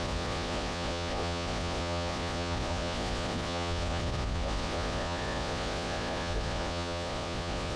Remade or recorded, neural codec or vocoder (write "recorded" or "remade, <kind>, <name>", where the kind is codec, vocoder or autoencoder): remade, vocoder, Vocos